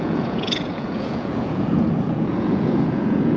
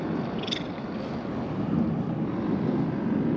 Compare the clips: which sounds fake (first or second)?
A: first